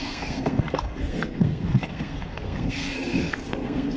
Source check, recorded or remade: remade